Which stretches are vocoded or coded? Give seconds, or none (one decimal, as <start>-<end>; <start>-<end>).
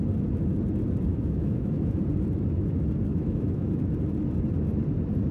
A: 1.1-2.0; 3.1-3.7